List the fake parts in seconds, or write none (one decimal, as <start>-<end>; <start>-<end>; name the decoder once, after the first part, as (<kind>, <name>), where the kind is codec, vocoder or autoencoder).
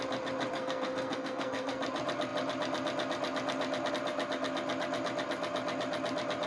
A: 0.5-1.8 (codec, SNAC)